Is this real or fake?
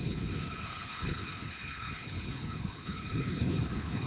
fake